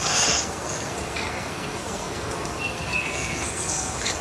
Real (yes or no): no